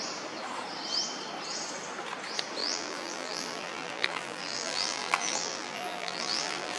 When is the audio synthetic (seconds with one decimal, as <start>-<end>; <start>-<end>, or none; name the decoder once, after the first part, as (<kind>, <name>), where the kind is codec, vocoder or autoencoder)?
2.6-6.8 (vocoder, BigVGAN v2)

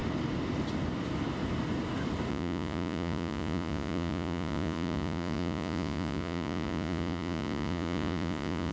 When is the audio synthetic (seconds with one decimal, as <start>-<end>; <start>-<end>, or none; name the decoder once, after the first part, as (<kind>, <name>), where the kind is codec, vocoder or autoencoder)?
2.3-8.7 (vocoder, Vocos)

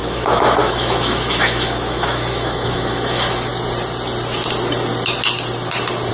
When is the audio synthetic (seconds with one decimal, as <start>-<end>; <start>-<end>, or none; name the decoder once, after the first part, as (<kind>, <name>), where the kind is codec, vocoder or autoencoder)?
0.0-3.5 (autoencoder, DAC-VAE)

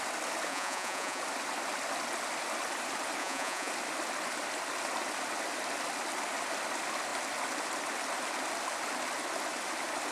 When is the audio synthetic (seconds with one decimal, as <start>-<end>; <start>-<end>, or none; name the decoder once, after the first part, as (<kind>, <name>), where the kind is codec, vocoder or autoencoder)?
0.5-1.2 (vocoder, Vocos); 3.2-3.7

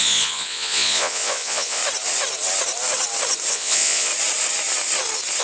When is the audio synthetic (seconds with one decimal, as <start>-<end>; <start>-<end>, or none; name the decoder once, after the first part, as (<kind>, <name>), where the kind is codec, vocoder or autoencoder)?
0.0-1.8 (vocoder, Vocos); 3.5-4.1

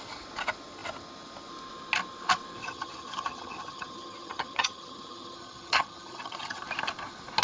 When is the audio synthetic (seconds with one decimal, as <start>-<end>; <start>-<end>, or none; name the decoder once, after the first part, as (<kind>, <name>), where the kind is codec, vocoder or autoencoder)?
2.6-6.6 (vocoder, HiFi-GAN)

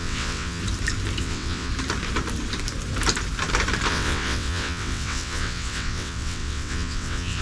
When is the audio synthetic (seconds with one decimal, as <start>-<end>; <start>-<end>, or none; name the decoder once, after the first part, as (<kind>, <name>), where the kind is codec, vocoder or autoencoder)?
0.0-0.6 (vocoder, WaveNeXt); 1.2-1.7; 3.9-7.4

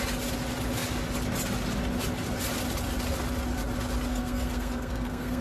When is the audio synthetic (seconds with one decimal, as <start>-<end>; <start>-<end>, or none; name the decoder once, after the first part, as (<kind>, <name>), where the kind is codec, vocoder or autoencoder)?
4.1-5.4 (codec, SNAC)